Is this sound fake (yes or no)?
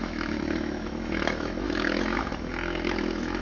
yes